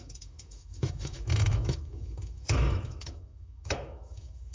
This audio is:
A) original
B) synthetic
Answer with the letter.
B